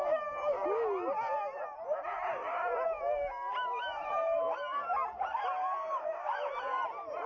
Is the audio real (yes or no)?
yes